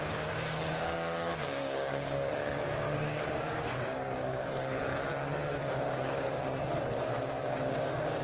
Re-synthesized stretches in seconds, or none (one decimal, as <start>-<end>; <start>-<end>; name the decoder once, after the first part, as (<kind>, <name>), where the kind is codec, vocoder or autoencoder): 0.0-4.9 (codec, DAC); 5.8-6.4; 7.4-8.2